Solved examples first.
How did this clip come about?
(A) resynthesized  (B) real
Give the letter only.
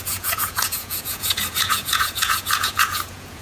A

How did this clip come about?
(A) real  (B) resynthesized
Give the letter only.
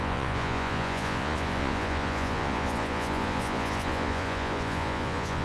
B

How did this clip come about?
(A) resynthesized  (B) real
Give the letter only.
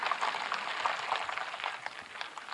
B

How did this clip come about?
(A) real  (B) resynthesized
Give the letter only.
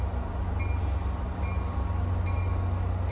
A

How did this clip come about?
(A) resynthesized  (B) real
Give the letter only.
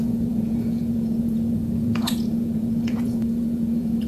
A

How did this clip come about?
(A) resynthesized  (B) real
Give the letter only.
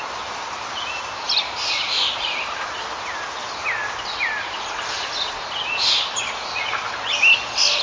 B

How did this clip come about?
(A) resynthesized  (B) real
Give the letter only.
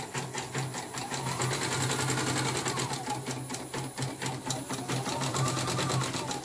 B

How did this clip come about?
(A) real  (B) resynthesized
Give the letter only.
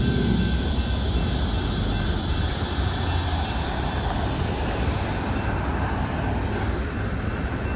A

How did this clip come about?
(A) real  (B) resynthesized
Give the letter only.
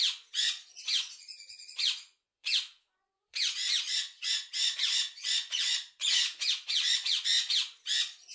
B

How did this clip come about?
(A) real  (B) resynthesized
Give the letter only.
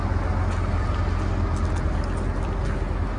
A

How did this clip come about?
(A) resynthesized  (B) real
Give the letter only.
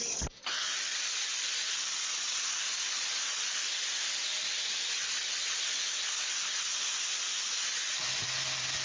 B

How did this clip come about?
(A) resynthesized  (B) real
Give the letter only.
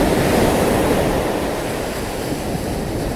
B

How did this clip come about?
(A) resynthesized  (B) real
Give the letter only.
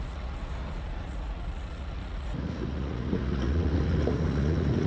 A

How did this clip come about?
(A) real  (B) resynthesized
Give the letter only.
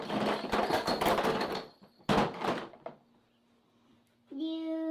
A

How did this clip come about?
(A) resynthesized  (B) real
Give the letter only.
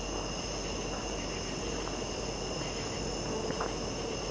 B